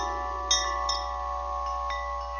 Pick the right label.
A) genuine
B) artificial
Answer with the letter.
A